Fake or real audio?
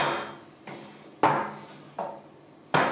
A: real